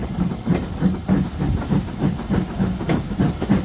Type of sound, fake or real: real